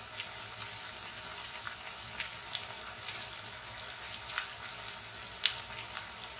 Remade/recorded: recorded